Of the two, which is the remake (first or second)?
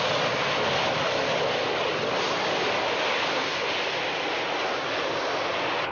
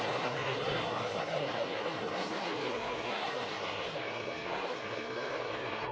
second